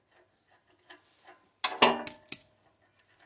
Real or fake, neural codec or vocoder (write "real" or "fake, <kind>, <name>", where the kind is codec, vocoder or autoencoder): real